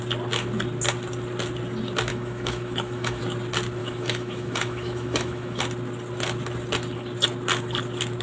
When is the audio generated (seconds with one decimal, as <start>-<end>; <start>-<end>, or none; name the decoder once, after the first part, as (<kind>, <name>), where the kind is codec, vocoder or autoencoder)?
2.1-3.2 (autoencoder, DAC-VAE); 3.8-5.6